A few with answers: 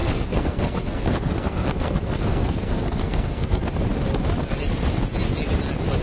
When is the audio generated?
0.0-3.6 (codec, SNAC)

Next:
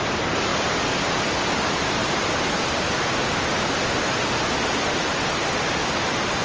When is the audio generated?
none

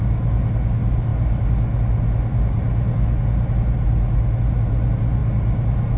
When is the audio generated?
none

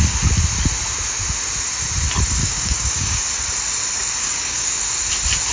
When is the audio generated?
2.4-3.2 (codec, DAC); 4.2-4.8

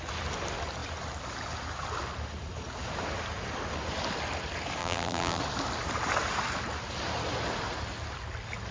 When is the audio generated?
4.8-5.4 (vocoder, BigVGAN v2)

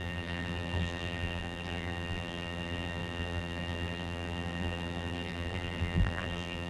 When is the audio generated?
0.0-6.7 (vocoder, BigVGAN v2)